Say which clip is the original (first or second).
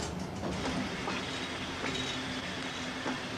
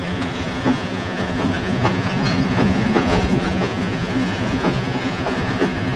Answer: first